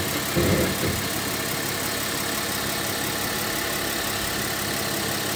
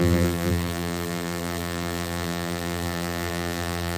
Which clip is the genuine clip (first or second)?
first